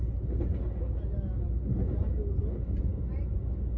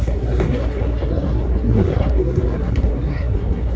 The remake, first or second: second